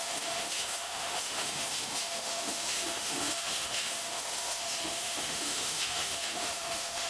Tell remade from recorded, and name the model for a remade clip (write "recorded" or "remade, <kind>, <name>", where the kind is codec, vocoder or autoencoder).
remade, autoencoder, DAC-VAE